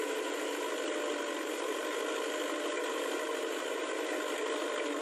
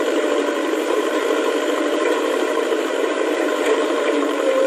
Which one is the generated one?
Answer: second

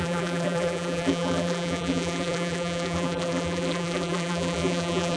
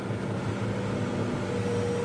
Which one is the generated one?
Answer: first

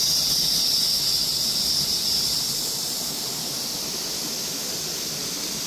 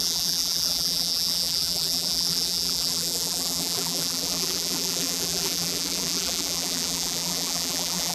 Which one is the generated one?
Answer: second